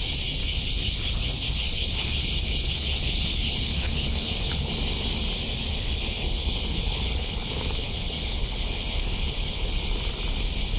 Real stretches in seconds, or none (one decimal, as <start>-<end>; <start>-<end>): 0.0-0.4; 4.7-5.7; 9.9-10.8

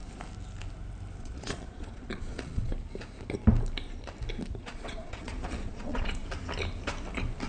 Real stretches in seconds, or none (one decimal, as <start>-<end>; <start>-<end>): 0.0-1.2; 2.7-4.6; 6.2-7.5

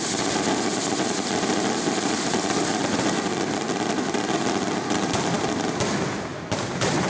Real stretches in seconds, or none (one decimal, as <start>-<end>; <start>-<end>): 0.0-6.3

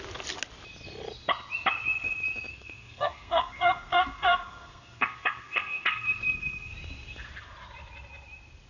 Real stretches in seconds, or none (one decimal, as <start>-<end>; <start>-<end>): 0.0-2.5; 6.7-8.7

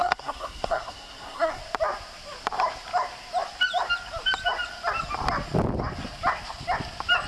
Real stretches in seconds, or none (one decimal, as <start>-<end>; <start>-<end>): 1.6-7.3